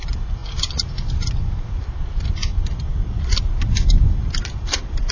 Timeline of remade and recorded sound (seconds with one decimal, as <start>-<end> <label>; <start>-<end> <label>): 0.0-5.1 recorded